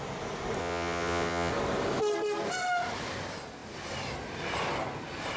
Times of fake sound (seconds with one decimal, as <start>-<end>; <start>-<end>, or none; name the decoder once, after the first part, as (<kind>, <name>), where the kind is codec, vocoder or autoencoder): 0.6-1.5 (vocoder, WaveNeXt)